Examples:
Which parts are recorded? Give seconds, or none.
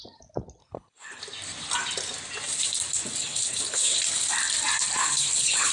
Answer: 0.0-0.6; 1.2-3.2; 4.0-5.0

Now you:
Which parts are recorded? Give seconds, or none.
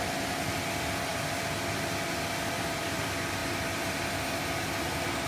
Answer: 0.0-1.1; 3.0-3.4; 4.4-5.3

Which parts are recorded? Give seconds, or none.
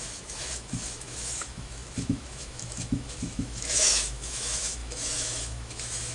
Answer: none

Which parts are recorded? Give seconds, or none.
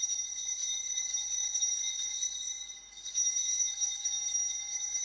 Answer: none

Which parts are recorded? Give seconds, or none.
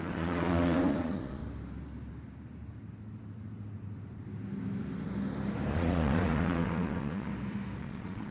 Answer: 1.4-5.7; 7.3-7.8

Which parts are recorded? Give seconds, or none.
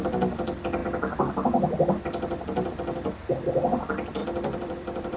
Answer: 0.0-4.2